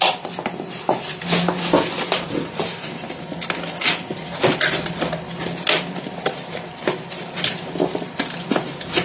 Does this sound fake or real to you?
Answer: real